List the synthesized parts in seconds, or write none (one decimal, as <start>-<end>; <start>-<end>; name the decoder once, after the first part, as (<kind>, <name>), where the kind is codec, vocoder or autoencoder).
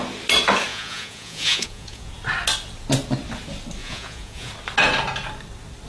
0.7-2.1 (vocoder, Vocos); 3.8-4.5